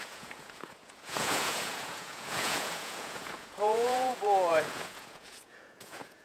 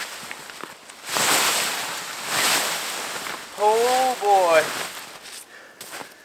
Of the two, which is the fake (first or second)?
first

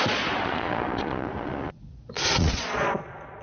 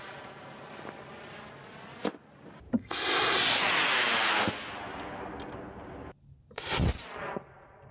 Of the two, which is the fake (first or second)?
first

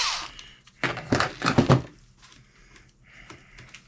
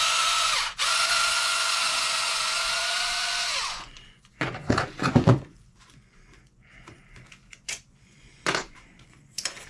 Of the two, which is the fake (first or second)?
second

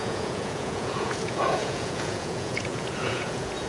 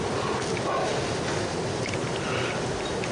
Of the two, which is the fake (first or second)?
first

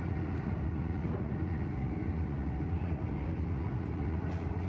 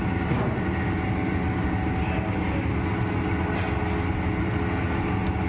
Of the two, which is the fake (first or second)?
first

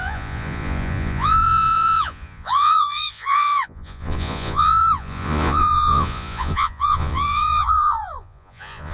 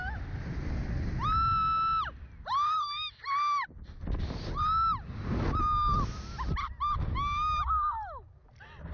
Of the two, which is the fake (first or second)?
first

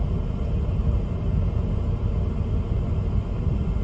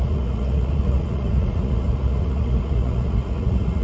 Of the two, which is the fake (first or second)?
second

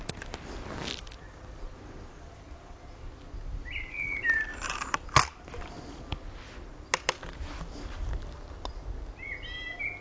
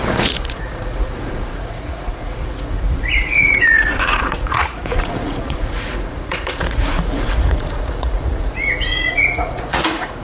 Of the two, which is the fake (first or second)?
second